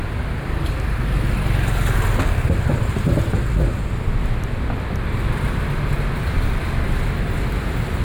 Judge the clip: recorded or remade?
recorded